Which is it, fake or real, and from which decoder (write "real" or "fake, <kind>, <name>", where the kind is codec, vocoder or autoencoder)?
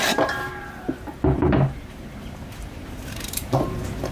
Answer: fake, vocoder, BigVGAN v2